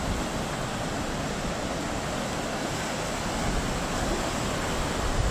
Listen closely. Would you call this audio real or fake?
real